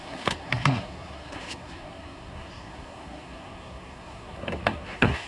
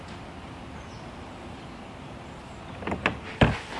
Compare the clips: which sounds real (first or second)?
second